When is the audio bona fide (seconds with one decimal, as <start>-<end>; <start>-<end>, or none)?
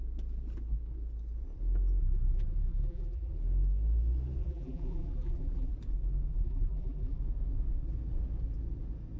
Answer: 0.0-2.0; 3.3-4.4; 5.7-6.3; 7.2-9.2